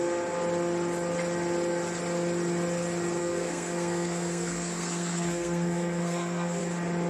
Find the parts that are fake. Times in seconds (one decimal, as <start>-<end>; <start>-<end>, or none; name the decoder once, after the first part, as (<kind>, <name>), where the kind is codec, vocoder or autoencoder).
3.2-6.6 (codec, SNAC)